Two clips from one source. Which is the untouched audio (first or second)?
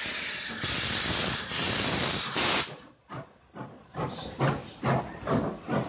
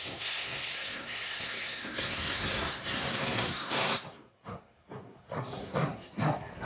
first